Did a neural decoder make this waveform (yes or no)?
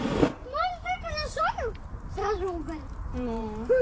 yes